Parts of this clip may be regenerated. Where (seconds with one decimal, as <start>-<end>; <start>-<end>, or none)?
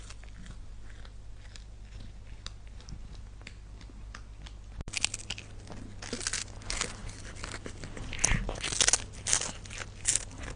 none